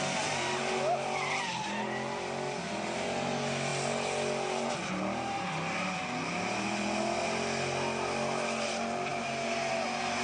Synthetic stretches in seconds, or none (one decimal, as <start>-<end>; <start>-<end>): none

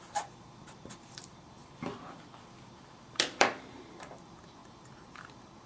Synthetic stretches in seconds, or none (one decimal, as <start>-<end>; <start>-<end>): 0.0-1.6; 2.6-4.6; 5.1-5.7

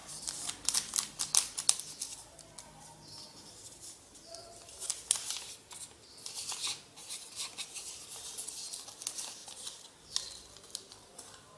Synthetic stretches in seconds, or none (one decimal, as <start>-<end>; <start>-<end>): 0.0-1.7; 7.0-7.9; 9.4-11.6

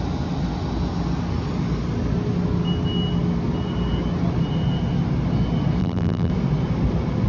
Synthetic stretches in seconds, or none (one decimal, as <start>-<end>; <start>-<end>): 5.8-6.3